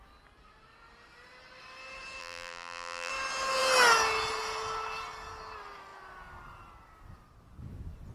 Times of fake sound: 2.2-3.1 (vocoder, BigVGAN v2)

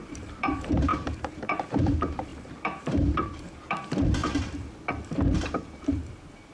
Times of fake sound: 0.0-4.2 (vocoder, BigVGAN v2); 5.1-6.5